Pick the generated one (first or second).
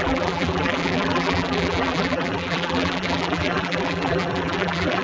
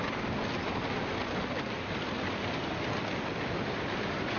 first